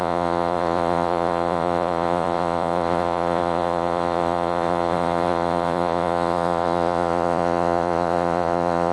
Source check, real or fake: fake